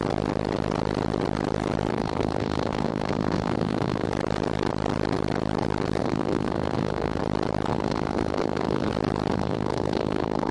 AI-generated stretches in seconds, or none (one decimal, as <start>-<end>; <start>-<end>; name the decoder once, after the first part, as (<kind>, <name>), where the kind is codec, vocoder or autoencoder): 1.9-4.1 (codec, SNAC); 6.0-7.2; 7.7-8.9; 9.3-10.5